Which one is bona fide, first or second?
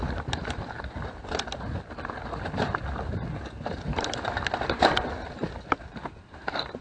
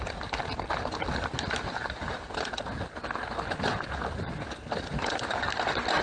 second